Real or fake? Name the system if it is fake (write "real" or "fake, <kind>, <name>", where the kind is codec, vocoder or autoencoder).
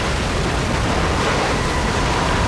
real